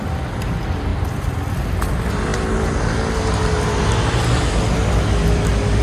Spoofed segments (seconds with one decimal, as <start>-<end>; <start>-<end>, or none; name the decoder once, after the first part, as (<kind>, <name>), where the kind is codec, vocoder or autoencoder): 0.9-1.5 (vocoder, BigVGAN v2)